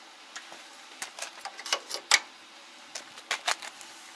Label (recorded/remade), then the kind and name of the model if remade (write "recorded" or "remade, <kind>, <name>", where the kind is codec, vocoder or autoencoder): recorded